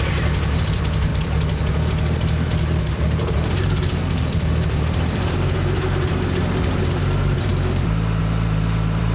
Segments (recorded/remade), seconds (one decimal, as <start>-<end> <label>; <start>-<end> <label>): 0.0-1.1 remade; 1.1-2.8 recorded; 2.8-7.5 remade; 7.5-8.2 recorded; 8.2-9.1 remade